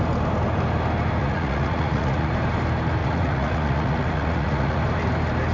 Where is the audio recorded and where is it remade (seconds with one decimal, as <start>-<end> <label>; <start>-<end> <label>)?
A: 0.0-1.2 recorded; 1.2-2.3 remade; 2.3-3.0 recorded; 3.0-4.8 remade; 4.8-5.5 recorded